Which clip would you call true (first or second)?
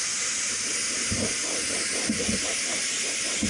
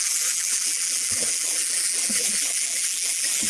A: first